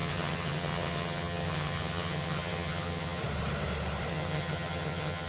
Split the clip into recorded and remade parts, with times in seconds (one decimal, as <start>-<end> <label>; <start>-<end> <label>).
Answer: 0.0-3.2 remade; 3.2-4.1 recorded; 4.1-5.3 remade